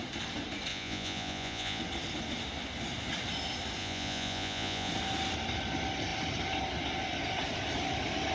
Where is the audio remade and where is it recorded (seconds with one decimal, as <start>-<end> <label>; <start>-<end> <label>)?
0.0-0.7 recorded; 0.7-1.8 remade; 1.8-3.8 recorded; 3.8-4.9 remade; 4.9-8.3 recorded